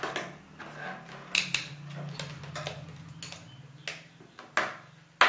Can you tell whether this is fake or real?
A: real